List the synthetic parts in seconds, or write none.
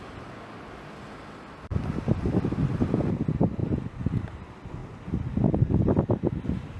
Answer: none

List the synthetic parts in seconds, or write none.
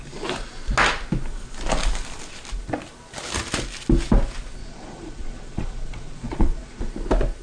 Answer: 4.6-6.9 (vocoder, Vocos)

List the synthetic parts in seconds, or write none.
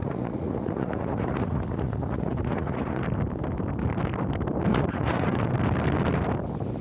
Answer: 0.0-3.0 (vocoder, Vocos); 4.7-5.5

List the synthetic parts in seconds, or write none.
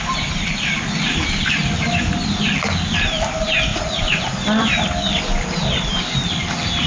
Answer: 3.7-4.2 (vocoder, Vocos)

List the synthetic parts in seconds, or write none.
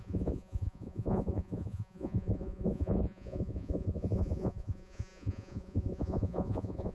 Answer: 0.0-6.9 (vocoder, Vocos)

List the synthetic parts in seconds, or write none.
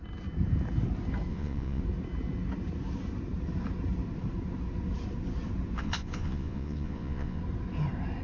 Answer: 1.3-1.8 (vocoder, Vocos); 5.8-7.4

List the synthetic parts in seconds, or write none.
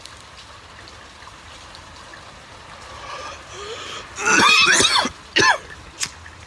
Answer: none